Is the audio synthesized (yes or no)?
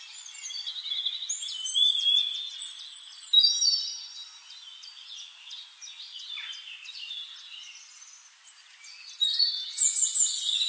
no